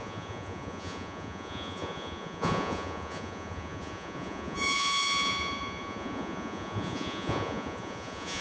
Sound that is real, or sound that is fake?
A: fake